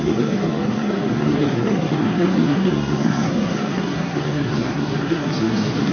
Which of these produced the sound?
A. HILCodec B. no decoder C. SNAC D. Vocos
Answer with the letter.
C